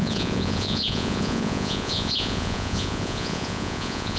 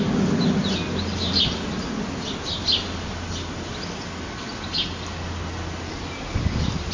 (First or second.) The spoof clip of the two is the first